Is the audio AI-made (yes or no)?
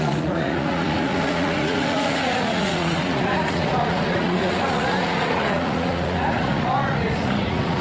yes